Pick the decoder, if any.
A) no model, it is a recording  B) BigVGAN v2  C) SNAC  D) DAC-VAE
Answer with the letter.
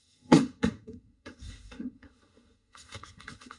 C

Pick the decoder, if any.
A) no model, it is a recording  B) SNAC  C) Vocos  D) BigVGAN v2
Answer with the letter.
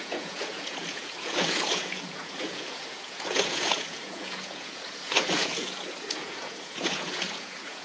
C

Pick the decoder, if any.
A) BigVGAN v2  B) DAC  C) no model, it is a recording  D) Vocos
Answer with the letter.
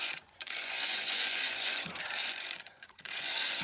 D